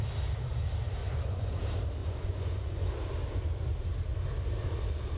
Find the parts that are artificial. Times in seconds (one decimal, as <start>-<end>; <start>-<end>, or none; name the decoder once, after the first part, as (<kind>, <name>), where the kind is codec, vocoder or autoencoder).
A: 1.0-1.6 (vocoder, Vocos); 2.0-2.9